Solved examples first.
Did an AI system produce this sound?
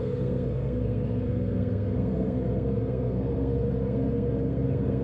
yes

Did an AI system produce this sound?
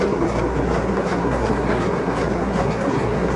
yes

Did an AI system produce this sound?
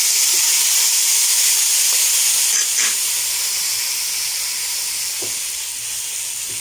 no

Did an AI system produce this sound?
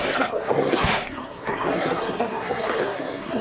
yes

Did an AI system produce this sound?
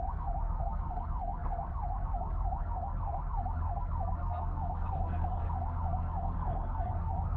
yes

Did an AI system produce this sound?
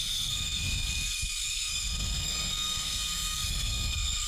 yes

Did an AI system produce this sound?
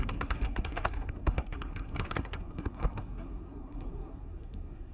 yes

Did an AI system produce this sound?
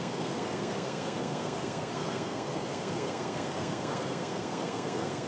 yes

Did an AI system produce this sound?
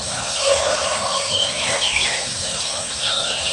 yes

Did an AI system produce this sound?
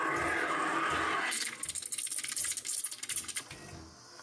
no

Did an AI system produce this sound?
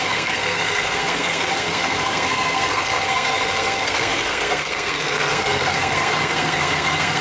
yes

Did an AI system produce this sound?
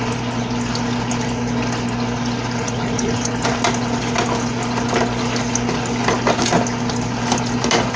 no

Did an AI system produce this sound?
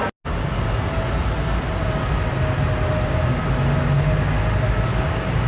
no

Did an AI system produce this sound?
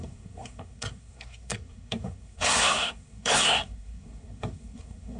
yes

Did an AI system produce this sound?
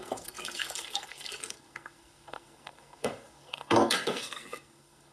yes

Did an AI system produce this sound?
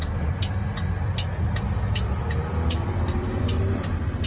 no